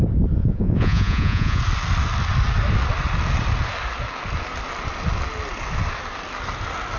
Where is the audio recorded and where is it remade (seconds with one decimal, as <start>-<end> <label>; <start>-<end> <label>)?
0.0-0.4 recorded; 0.4-1.6 remade; 1.6-7.0 recorded